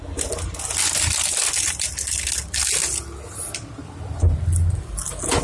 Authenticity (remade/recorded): recorded